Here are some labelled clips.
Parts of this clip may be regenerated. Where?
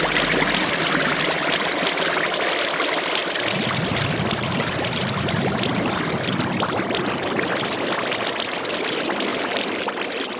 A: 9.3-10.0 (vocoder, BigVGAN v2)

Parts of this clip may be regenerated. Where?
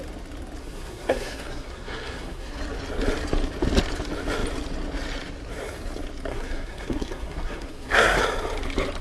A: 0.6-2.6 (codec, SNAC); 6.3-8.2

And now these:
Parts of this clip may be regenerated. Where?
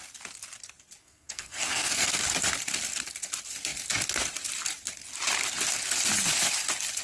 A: 1.0-2.2 (codec, SNAC)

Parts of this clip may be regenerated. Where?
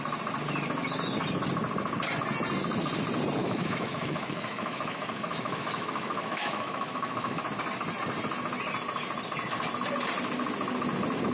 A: 3.4-7.4 (autoencoder, DAC-VAE)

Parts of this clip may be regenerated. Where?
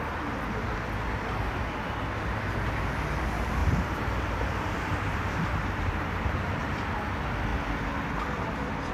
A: 3.6-6.6 (vocoder, BigVGAN v2)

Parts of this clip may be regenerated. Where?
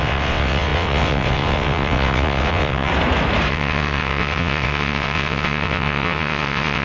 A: 0.0-2.9 (vocoder, WaveNeXt); 3.5-6.8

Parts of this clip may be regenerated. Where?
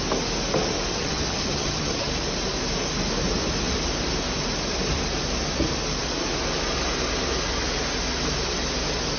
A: 0.9-2.1 (vocoder, HiFi-GAN)